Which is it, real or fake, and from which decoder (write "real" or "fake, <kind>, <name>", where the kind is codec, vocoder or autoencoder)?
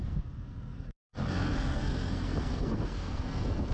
fake, codec, SNAC